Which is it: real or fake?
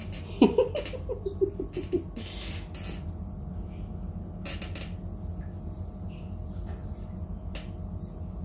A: real